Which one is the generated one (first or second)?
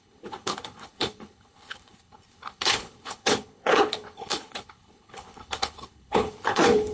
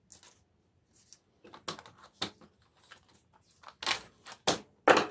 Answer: first